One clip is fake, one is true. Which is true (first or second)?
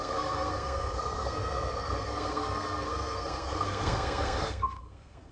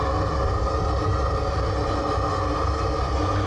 second